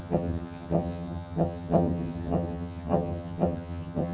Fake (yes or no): yes